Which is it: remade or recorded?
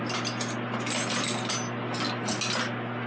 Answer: recorded